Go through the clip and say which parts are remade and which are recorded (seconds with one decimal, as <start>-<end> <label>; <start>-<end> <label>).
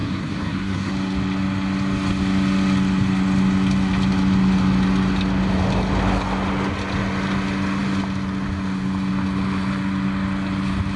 0.0-0.9 remade; 0.9-11.0 recorded